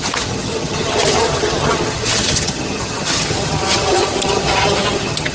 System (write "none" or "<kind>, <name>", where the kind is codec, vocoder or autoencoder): vocoder, HiFi-GAN